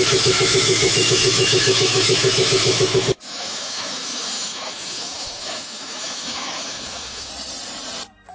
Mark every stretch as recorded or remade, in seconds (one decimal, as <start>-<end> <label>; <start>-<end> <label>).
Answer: 0.0-7.3 remade; 7.3-8.3 recorded